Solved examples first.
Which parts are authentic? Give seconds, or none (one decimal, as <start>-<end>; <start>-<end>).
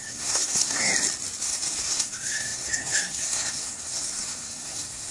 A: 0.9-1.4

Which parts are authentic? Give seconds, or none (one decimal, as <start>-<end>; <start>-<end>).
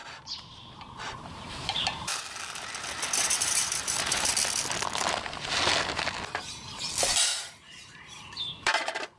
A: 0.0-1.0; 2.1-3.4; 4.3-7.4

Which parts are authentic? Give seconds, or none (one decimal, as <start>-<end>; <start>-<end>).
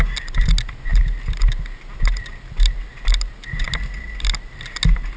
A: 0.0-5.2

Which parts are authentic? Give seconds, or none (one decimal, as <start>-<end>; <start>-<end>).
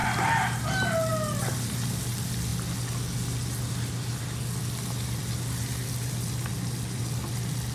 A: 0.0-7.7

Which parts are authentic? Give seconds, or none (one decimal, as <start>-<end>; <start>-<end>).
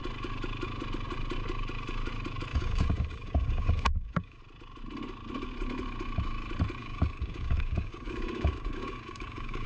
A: 0.0-2.5; 4.4-6.8